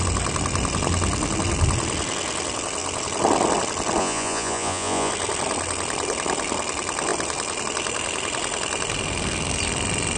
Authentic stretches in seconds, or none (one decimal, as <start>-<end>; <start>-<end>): 0.0-4.0; 5.1-10.2